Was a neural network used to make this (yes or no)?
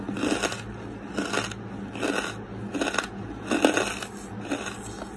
no